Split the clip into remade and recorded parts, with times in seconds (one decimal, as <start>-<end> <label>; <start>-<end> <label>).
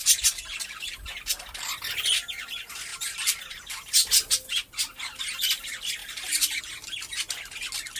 0.0-6.0 recorded; 6.0-6.6 remade; 6.6-8.0 recorded